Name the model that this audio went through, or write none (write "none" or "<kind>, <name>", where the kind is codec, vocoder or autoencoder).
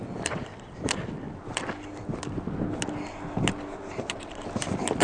none